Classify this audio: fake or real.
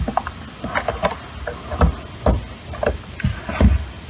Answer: real